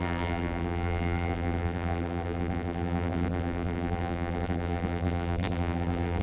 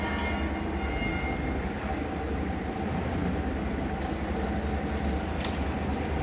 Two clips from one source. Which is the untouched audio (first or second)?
second